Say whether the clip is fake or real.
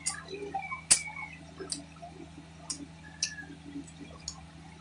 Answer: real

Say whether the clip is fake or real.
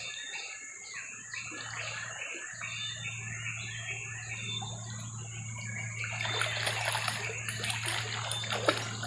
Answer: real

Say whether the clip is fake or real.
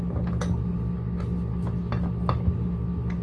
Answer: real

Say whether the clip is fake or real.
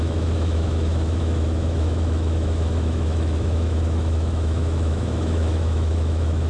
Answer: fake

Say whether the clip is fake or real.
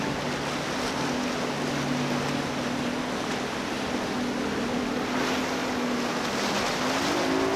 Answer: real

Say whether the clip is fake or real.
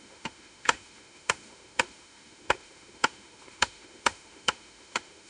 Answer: fake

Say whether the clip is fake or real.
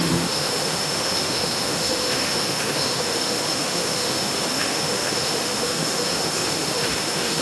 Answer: fake